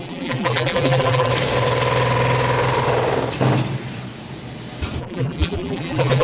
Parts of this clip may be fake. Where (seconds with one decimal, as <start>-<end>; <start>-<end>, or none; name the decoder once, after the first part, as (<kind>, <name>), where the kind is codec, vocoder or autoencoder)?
0.0-1.3 (vocoder, BigVGAN v2); 5.0-6.2